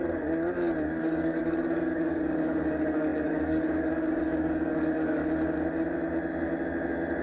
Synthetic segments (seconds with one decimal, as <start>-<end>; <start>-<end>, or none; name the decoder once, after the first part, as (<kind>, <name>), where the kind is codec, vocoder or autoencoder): 1.0-5.2 (codec, DAC)